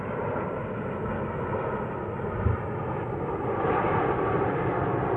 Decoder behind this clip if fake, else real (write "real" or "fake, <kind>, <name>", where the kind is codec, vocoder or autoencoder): real